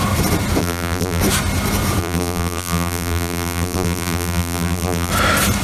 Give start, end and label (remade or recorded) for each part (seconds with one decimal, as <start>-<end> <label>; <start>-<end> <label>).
0.0-0.6 recorded; 0.6-1.2 remade; 1.2-2.0 recorded; 2.0-5.1 remade; 5.1-5.6 recorded